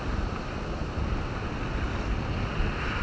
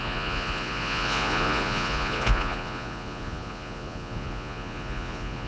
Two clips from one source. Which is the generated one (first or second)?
second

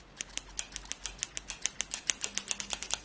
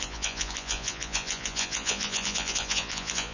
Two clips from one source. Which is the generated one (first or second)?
second